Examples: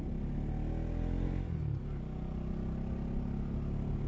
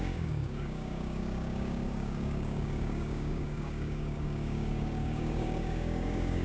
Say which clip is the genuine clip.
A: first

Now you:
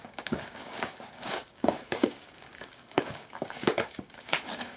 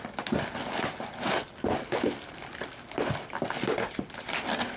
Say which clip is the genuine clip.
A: second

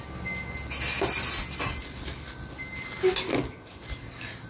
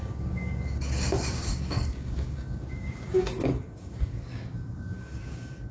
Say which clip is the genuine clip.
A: first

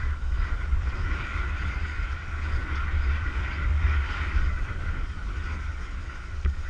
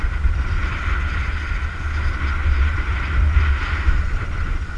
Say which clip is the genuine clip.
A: second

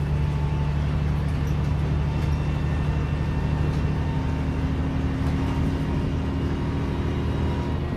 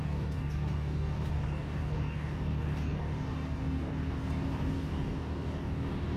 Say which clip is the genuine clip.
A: first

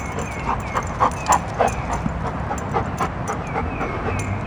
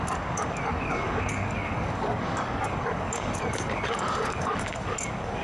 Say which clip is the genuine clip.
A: first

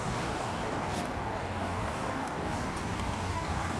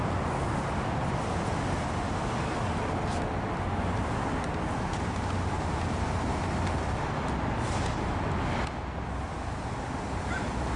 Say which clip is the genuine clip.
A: second